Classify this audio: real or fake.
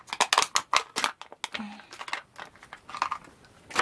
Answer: real